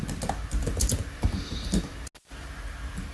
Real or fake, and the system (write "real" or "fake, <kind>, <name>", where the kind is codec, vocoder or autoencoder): real